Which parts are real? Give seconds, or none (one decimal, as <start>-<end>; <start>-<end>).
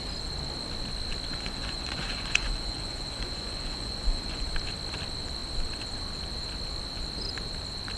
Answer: 0.0-1.3; 4.5-8.0